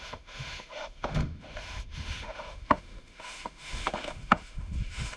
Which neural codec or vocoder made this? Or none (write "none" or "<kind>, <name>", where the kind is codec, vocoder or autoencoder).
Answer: autoencoder, DAC-VAE